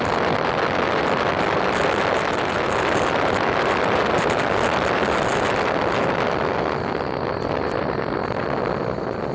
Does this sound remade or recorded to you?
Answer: remade